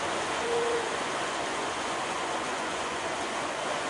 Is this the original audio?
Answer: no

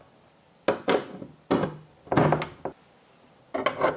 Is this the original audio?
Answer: yes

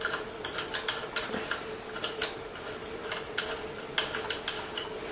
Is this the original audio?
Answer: yes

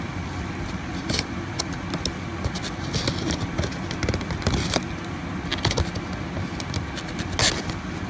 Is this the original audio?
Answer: yes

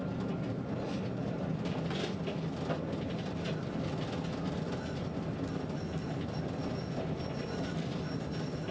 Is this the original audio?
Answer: yes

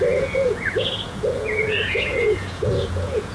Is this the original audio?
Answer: no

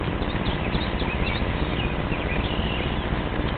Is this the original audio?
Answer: no